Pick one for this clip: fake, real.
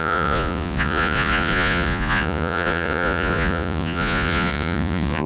fake